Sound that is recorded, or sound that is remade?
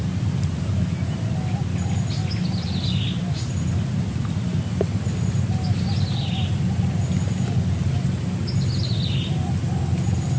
recorded